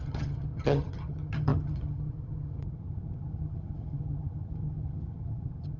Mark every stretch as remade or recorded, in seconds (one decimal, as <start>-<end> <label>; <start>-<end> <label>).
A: 0.0-5.8 remade